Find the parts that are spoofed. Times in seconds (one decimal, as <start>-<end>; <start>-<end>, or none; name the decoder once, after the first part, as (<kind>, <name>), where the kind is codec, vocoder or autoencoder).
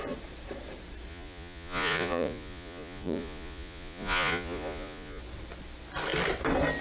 1.1-5.2 (vocoder, Vocos)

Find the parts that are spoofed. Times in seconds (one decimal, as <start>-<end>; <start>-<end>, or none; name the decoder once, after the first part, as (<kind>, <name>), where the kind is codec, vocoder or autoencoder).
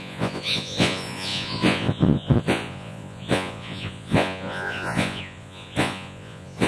0.0-6.7 (vocoder, Vocos)